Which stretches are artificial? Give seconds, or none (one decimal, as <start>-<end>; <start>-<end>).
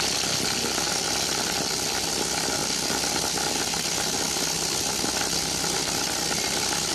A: none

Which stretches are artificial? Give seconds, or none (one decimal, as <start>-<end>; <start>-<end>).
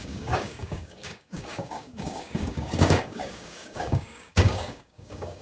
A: 0.0-5.4